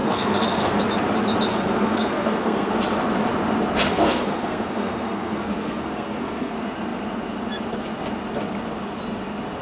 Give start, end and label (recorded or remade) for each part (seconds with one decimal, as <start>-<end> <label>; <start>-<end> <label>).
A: 0.0-0.8 remade; 0.8-1.5 recorded; 1.5-2.7 remade; 2.7-3.8 recorded; 3.8-6.5 remade; 6.5-9.6 recorded